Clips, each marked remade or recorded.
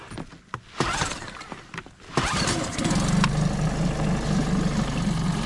recorded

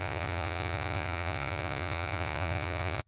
remade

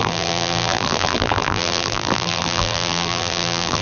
remade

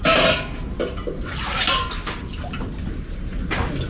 recorded